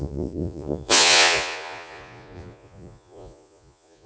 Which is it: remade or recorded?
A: remade